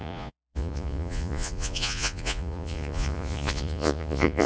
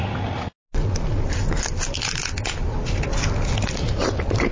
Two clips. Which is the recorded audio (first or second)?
second